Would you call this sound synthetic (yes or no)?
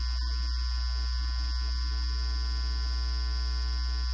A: no